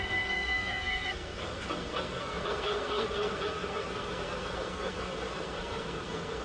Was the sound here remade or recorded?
remade